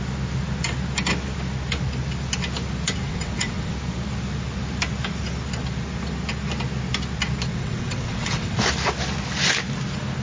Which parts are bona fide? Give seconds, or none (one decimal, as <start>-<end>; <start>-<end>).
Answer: 0.0-3.1; 3.7-7.5; 8.6-10.2

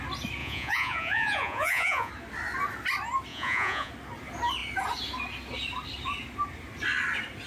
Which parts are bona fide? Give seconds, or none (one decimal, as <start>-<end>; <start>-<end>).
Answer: 0.0-0.4; 2.1-3.3; 3.9-7.5

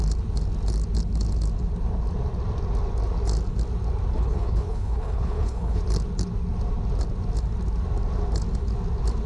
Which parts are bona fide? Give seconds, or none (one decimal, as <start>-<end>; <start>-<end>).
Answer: 0.0-4.1; 5.8-9.3

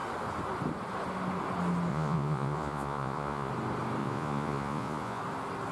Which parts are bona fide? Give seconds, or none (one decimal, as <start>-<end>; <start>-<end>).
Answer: 0.0-1.9; 3.5-4.0; 5.2-5.7